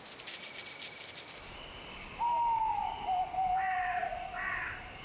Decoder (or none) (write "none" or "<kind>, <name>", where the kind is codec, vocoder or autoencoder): none